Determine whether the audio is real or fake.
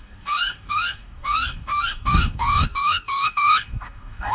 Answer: fake